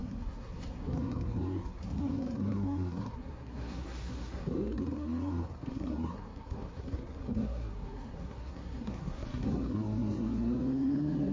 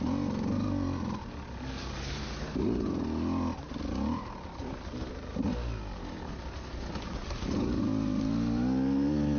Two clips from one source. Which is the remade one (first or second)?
first